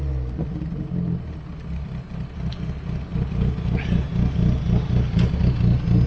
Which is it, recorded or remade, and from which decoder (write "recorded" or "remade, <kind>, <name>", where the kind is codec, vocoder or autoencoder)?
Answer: recorded